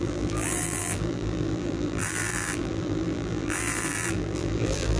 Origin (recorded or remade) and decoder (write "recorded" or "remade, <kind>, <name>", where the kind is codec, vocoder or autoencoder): remade, vocoder, BigVGAN v2